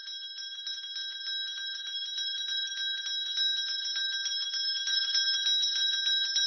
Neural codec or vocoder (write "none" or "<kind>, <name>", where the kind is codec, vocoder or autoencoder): none